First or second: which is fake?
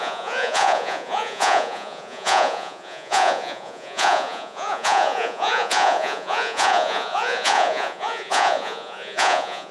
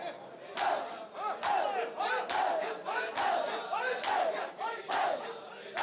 first